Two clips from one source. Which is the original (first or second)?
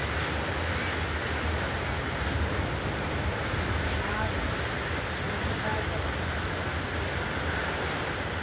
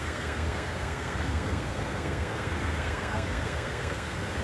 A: first